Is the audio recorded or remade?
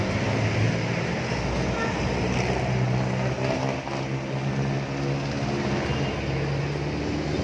recorded